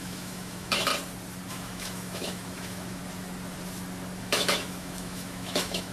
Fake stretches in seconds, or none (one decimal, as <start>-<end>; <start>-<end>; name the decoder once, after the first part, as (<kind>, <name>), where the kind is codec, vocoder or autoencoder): 0.0-0.9 (autoencoder, DAC-VAE); 1.5-3.0; 4.2-5.9

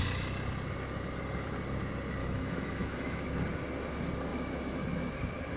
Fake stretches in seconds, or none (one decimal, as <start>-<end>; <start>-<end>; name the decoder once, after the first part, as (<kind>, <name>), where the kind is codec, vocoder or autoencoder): 2.2-3.3 (autoencoder, DAC-VAE); 4.3-5.1

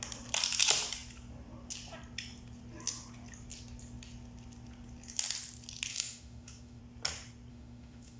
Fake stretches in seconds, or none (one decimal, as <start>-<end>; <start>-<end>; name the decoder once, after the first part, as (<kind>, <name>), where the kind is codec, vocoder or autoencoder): 5.9-6.8 (autoencoder, DAC-VAE); 7.5-8.2

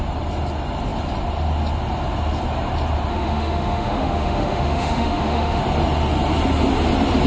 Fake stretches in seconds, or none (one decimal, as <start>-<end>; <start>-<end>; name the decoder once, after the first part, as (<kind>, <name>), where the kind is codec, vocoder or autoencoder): 3.1-5.6 (autoencoder, DAC-VAE)